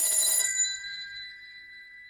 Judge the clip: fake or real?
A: fake